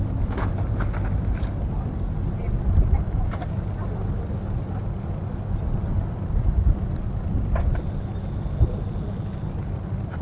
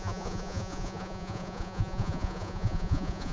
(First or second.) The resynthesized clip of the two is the second